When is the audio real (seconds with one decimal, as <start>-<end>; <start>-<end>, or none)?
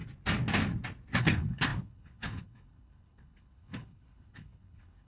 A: 0.0-1.2